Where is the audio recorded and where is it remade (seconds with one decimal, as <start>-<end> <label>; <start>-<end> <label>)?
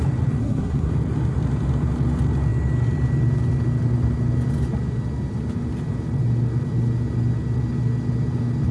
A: 0.0-0.4 recorded; 0.4-0.9 remade; 0.9-8.7 recorded